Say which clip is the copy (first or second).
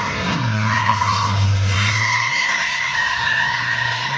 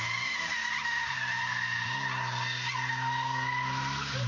first